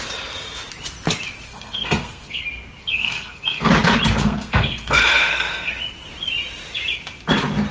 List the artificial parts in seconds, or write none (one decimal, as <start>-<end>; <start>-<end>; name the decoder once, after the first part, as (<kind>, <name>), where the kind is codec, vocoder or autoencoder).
1.5-2.4 (codec, SNAC); 2.8-3.7; 4.2-5.7